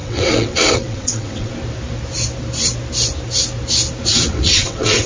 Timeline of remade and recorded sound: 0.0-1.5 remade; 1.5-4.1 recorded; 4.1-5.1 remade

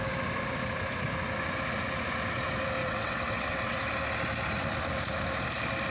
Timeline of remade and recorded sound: 0.0-2.8 recorded; 2.8-3.8 remade; 3.8-5.9 recorded

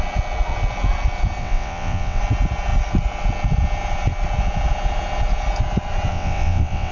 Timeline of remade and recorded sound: 0.0-1.4 recorded; 1.4-2.2 remade; 2.2-6.1 recorded; 6.1-6.9 remade

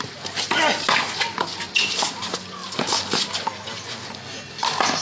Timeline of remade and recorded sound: 0.0-5.0 recorded

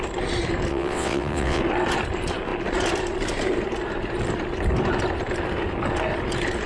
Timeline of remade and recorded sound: 0.0-0.7 recorded; 0.7-1.6 remade; 1.6-6.7 recorded

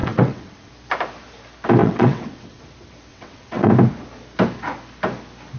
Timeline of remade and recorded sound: 0.0-0.7 remade; 0.7-1.8 recorded; 1.8-2.6 remade; 2.6-3.1 recorded; 3.1-3.7 remade; 3.7-5.6 recorded